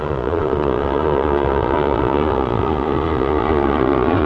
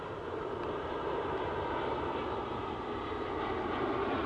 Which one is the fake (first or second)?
first